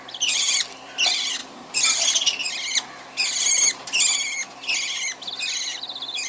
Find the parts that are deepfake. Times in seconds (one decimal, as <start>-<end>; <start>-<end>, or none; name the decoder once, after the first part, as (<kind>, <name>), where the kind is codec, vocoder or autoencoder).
none